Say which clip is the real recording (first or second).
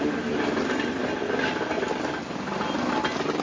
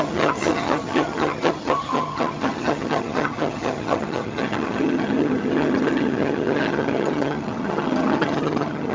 first